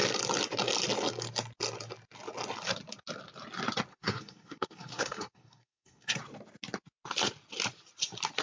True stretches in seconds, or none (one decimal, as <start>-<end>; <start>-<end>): 0.0-3.9; 6.2-8.4